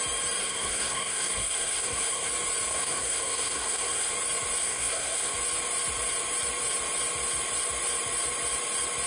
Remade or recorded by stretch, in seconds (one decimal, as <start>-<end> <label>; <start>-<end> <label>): 0.0-0.4 recorded; 0.4-2.3 remade; 2.3-2.7 recorded; 2.7-4.1 remade; 4.1-4.6 recorded; 4.6-5.3 remade; 5.3-9.1 recorded